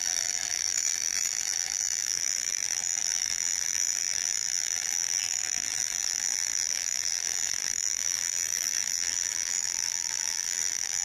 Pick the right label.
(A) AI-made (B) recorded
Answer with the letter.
A